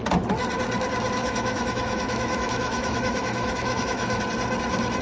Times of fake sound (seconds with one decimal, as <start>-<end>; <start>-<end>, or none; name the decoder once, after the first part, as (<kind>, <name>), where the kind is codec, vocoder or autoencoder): 1.2-4.2 (autoencoder, DAC-VAE)